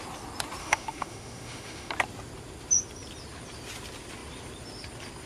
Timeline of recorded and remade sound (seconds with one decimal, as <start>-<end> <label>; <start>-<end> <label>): 0.0-0.6 recorded; 0.6-1.9 remade; 1.9-5.3 recorded